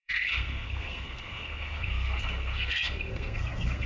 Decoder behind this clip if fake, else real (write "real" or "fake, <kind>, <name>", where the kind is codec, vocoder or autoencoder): fake, codec, SNAC